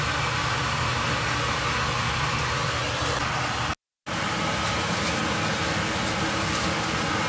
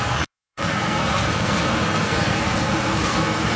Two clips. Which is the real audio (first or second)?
first